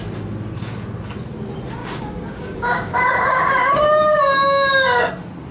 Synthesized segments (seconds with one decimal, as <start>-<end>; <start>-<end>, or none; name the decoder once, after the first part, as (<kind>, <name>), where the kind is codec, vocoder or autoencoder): 1.8-5.1 (codec, DAC)